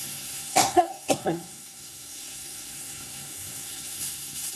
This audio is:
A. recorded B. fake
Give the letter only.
B